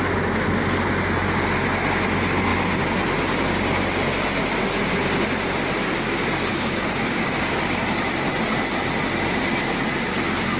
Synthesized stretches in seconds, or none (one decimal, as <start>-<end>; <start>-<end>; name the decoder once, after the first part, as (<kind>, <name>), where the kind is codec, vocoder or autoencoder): 6.5-7.5 (codec, DAC)